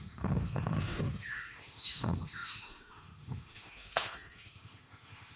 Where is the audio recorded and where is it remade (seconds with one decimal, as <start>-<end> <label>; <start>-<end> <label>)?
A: 0.0-5.4 remade